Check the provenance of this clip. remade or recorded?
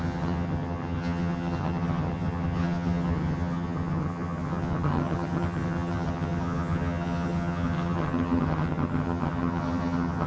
remade